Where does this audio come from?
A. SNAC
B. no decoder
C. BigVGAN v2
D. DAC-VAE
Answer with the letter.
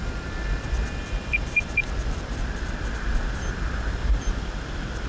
C